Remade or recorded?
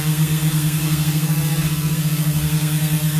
remade